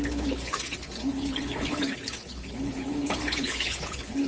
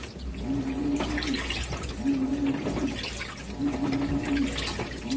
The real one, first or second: second